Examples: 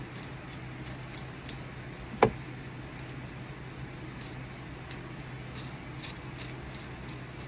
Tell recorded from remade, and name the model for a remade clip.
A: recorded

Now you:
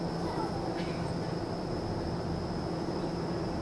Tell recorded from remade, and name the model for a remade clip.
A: recorded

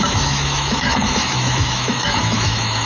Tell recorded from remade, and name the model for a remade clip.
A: remade, autoencoder, DAC-VAE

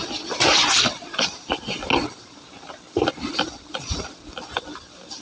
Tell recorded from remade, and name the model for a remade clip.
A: recorded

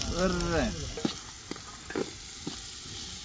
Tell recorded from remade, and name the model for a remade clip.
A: recorded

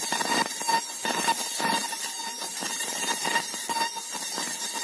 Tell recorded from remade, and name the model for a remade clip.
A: recorded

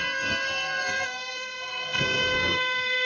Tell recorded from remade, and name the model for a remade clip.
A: remade, codec, SNAC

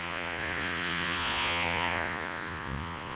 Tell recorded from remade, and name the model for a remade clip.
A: remade, vocoder, Vocos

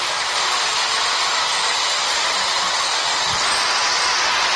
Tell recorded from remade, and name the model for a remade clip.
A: recorded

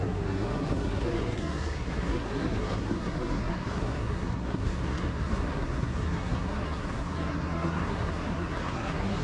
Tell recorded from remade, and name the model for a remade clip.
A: remade, codec, SNAC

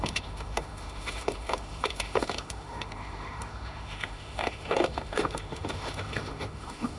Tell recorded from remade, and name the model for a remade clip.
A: remade, autoencoder, DAC-VAE